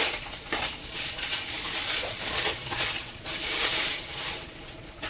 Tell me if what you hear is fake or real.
fake